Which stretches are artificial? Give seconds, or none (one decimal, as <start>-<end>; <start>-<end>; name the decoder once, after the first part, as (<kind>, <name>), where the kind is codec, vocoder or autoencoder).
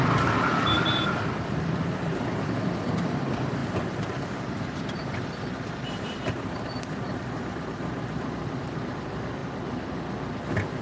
0.0-9.4 (vocoder, BigVGAN v2)